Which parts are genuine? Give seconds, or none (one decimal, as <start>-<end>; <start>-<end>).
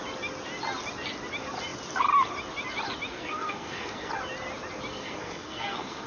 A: 0.0-3.1; 4.1-4.9